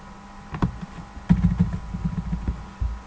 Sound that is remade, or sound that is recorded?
recorded